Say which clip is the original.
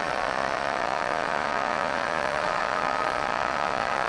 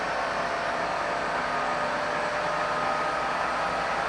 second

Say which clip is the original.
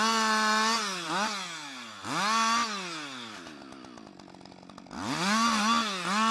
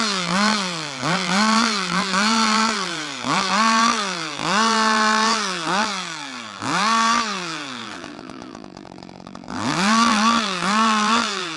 first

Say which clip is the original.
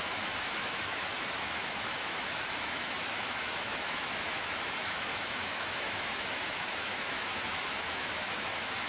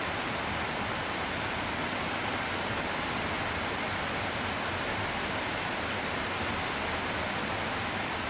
second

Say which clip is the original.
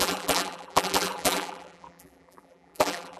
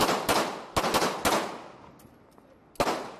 second